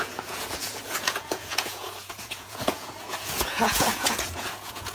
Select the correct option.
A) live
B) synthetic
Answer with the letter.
B